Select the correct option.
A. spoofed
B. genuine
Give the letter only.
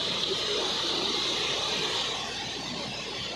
A